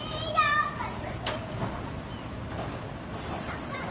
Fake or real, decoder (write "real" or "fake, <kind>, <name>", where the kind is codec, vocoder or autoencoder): real